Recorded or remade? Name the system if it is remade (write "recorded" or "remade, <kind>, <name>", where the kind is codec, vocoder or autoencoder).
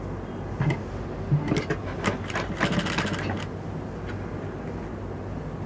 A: recorded